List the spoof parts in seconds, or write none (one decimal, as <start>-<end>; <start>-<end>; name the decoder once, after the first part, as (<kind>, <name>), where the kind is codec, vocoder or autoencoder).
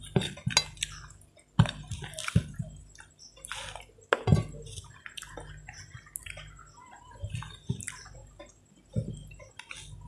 none